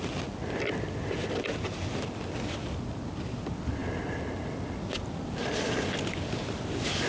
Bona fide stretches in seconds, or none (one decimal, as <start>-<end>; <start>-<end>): 0.0-7.1